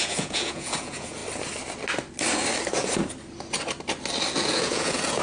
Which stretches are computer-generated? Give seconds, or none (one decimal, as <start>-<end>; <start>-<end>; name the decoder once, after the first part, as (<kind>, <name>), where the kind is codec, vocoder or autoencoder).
0.0-1.2 (vocoder, Vocos); 4.3-5.2